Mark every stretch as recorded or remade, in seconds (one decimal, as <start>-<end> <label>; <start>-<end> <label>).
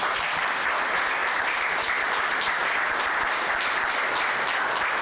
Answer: 0.0-1.2 recorded; 1.2-1.7 remade; 1.7-2.6 recorded; 2.6-4.2 remade; 4.2-5.0 recorded